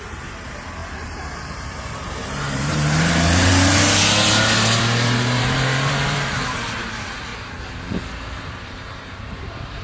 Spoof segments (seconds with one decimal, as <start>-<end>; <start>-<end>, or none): 0.0-3.5; 4.8-7.3; 8.1-9.8